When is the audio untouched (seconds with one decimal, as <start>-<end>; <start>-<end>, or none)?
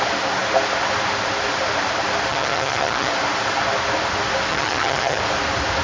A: 0.0-2.3; 3.1-4.5; 5.2-5.8